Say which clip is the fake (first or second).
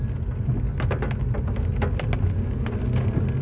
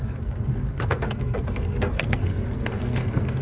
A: second